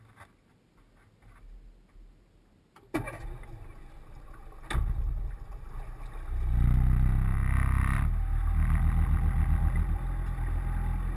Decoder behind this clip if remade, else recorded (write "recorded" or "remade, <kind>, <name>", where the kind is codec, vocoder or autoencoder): recorded